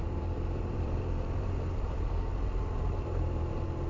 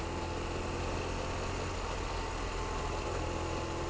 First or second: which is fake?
first